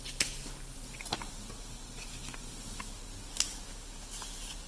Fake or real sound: real